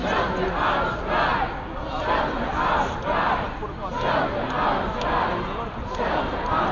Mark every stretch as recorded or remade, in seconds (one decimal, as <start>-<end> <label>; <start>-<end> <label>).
0.0-6.7 recorded